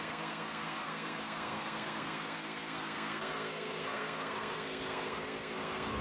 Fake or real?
fake